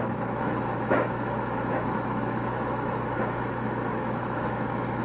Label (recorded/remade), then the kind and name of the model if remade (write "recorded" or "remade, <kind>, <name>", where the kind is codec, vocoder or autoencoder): remade, autoencoder, DAC-VAE